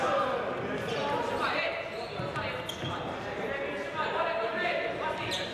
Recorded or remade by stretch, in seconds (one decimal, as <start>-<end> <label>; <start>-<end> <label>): 0.0-5.5 recorded